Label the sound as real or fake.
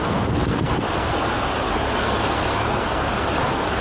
fake